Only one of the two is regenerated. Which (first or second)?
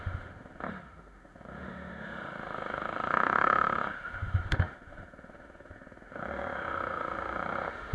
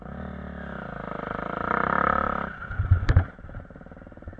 first